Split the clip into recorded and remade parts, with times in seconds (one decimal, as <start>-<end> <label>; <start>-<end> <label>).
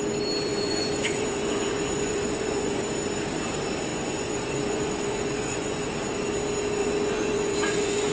0.0-0.5 recorded; 0.5-2.8 remade; 2.8-3.9 recorded; 3.9-5.9 remade; 5.9-6.8 recorded; 6.8-8.1 remade